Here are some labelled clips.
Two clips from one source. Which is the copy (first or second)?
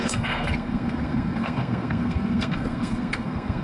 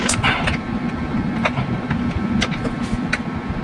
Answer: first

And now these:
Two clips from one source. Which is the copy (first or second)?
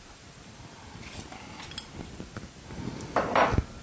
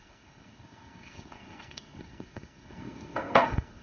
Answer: second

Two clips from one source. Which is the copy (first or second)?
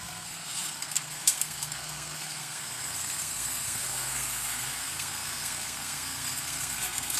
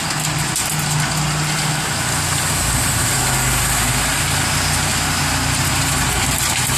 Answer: first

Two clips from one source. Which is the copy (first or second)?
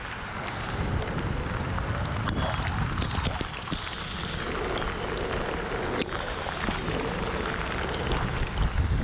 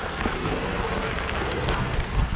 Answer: second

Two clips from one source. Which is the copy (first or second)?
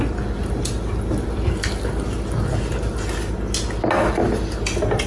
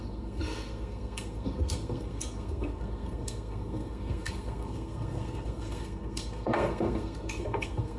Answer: second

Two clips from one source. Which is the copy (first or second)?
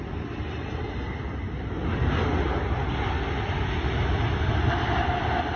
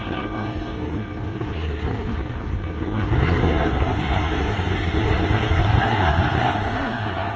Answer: second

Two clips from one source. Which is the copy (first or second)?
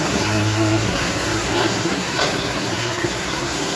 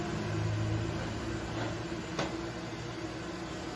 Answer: first